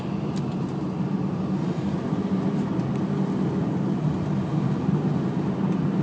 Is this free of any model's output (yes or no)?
yes